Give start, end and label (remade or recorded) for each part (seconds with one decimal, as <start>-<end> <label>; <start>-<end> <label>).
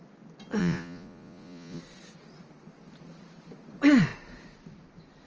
0.0-0.6 recorded; 0.6-1.8 remade; 1.8-5.3 recorded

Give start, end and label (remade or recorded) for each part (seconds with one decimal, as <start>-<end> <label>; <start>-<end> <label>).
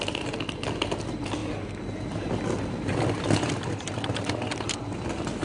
0.0-5.4 recorded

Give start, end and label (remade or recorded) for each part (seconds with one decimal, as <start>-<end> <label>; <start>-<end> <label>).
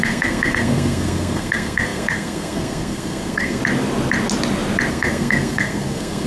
0.0-3.6 remade; 3.6-4.9 recorded; 4.9-6.3 remade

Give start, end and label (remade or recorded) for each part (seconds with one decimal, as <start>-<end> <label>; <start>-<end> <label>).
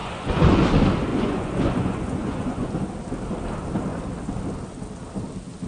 0.0-0.6 remade; 0.6-1.1 recorded; 1.1-2.7 remade; 2.7-5.7 recorded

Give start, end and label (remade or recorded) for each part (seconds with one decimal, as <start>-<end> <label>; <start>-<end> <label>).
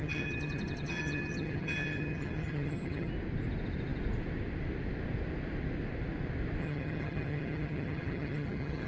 0.0-3.1 remade; 3.1-6.6 recorded; 6.6-8.9 remade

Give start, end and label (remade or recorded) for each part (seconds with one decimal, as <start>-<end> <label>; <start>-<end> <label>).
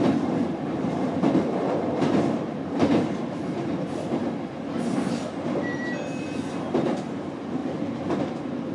0.0-4.2 remade; 4.2-6.7 recorded; 6.7-7.6 remade; 7.6-8.2 recorded; 8.2-8.7 remade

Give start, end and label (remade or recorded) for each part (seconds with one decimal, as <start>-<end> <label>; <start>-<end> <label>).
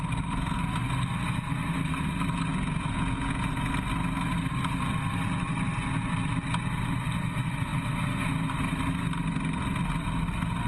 0.0-2.5 recorded; 2.5-3.7 remade; 3.7-10.7 recorded